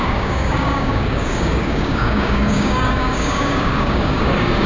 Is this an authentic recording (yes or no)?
no